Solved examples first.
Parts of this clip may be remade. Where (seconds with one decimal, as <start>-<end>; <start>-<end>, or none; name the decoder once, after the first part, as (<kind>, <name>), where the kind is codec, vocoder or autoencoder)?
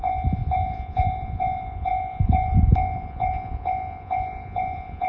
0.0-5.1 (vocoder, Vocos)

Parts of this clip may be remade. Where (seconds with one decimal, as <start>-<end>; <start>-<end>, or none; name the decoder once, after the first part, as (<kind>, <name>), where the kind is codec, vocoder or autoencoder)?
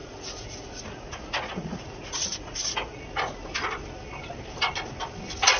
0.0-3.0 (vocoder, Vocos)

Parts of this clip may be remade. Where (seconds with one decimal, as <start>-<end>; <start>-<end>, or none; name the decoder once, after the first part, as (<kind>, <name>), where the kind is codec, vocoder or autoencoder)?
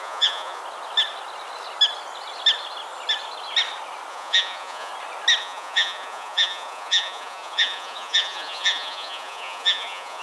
0.0-0.6 (vocoder, Vocos); 4.1-4.9; 5.4-10.2